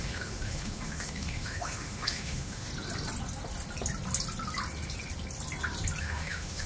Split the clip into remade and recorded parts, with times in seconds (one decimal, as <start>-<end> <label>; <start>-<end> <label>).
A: 0.0-2.7 remade; 2.7-6.0 recorded; 6.0-6.7 remade